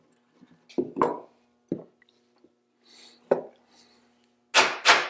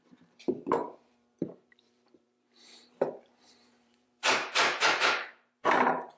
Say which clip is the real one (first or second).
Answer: first